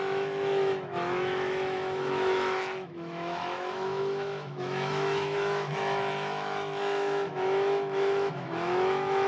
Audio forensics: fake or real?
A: fake